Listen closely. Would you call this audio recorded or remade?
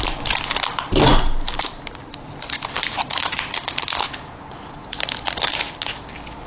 recorded